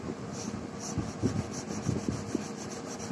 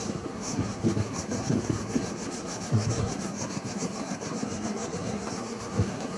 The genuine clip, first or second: first